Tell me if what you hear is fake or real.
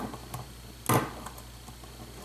real